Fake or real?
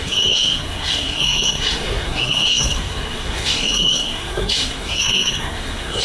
fake